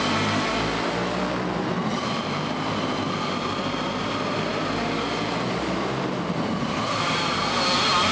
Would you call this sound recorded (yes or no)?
yes